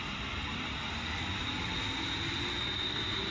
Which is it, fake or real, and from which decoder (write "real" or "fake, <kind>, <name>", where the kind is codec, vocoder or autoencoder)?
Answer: real